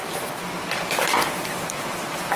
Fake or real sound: fake